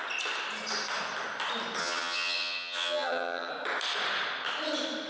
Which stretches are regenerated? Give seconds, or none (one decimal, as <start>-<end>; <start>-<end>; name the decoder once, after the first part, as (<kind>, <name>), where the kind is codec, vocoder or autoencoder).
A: 1.8-3.5 (vocoder, HiFi-GAN)